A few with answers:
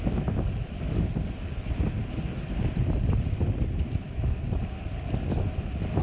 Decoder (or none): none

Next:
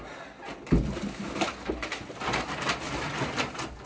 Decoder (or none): none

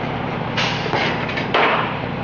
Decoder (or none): vocoder, BigVGAN v2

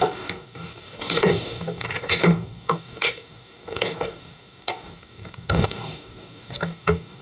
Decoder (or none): codec, DAC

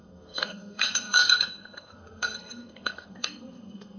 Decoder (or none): codec, SNAC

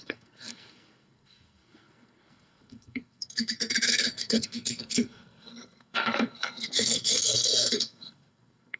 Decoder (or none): codec, SNAC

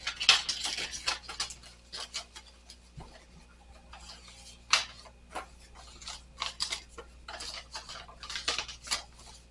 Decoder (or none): none